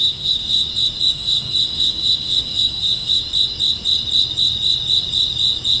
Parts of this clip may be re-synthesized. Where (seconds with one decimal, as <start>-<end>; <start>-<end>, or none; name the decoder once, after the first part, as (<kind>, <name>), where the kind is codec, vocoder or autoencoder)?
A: 0.0-0.5 (autoencoder, DAC-VAE); 1.0-3.2